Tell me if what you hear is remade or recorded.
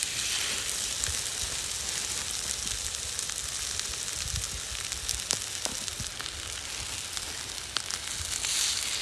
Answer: recorded